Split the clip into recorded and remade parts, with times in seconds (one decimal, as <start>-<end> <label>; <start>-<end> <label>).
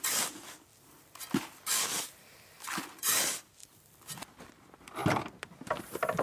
0.0-0.7 remade; 0.7-3.0 recorded; 3.0-3.6 remade; 3.6-4.4 recorded; 4.4-5.0 remade; 5.0-5.8 recorded; 5.8-6.2 remade